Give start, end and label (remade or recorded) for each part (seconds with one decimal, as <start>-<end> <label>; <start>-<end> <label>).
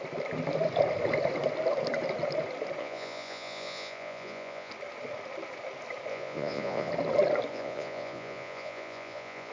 0.0-2.8 recorded; 2.8-4.7 remade; 4.7-6.1 recorded; 6.1-6.9 remade; 6.9-7.5 recorded; 7.5-9.5 remade